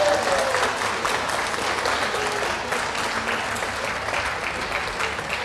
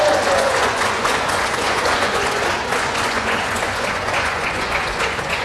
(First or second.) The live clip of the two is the first